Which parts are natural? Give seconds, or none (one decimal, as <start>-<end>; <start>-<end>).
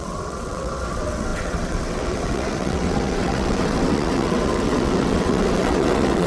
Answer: none